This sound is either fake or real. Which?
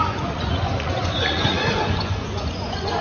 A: fake